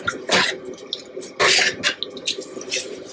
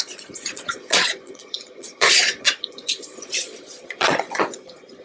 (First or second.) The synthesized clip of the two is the second